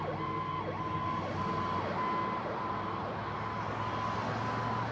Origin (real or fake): real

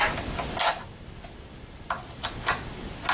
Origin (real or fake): real